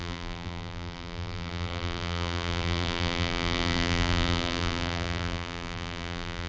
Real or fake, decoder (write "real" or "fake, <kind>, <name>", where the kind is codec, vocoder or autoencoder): fake, vocoder, BigVGAN v2